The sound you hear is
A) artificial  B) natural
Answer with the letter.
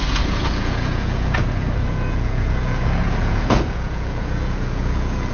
A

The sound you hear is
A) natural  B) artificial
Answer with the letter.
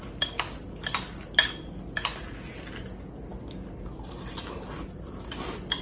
A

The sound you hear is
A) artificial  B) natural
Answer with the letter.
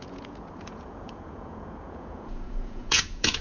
A